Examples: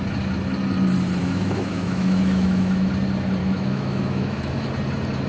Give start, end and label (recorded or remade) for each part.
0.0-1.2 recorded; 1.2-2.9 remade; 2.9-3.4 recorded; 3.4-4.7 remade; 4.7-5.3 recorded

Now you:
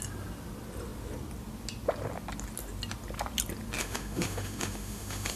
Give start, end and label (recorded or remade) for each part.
0.0-3.8 recorded; 3.8-5.4 remade

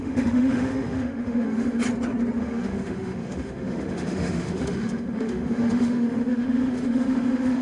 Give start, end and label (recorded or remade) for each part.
0.0-1.8 remade; 1.8-2.4 recorded; 2.4-7.6 remade